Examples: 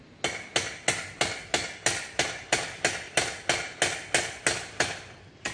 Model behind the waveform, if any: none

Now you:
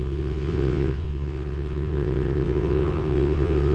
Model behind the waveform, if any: vocoder, WaveNeXt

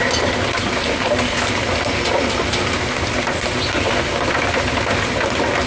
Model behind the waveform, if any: none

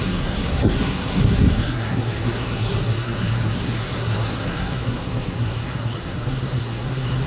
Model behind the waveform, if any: codec, SNAC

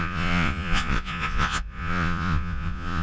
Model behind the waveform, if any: vocoder, Vocos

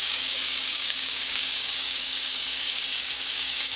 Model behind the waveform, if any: codec, DAC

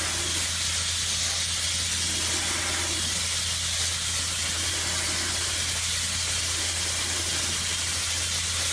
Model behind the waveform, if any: none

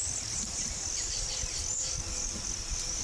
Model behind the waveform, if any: none